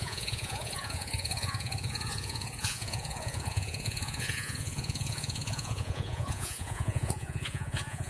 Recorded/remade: remade